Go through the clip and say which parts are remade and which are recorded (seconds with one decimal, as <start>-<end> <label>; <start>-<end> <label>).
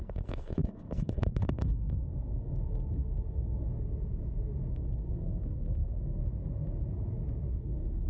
0.0-3.7 remade; 3.7-4.7 recorded; 4.7-6.2 remade; 6.2-7.6 recorded; 7.6-8.1 remade